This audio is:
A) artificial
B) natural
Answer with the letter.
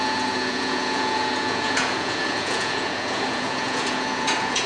A